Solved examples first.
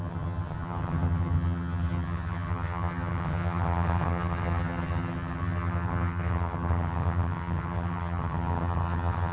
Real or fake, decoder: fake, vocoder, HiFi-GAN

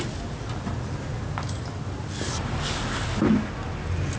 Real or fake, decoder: real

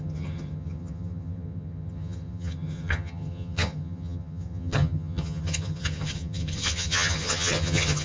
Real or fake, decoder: fake, vocoder, HiFi-GAN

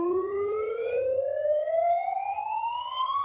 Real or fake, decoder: fake, vocoder, HiFi-GAN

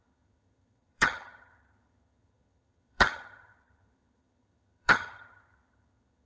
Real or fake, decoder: fake, vocoder, HiFi-GAN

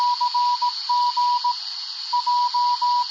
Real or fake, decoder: real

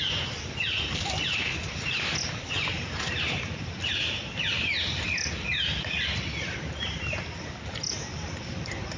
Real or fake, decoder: real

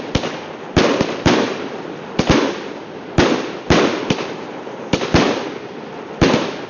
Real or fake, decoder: real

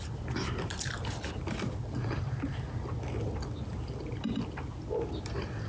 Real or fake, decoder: real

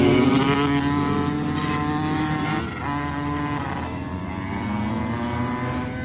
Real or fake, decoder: real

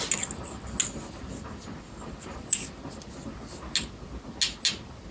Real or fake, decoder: real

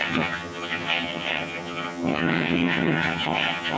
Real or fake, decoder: fake, vocoder, HiFi-GAN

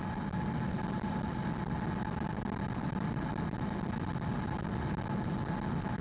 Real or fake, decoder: real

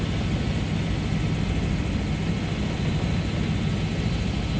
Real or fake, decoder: real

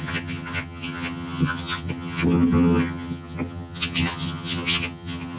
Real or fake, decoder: fake, vocoder, HiFi-GAN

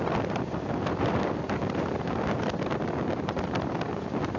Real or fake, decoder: real